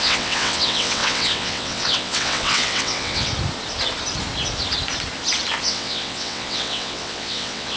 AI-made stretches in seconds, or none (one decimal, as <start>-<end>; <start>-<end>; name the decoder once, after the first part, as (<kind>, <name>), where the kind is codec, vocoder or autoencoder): 0.0-3.3 (vocoder, WaveNeXt); 5.6-7.8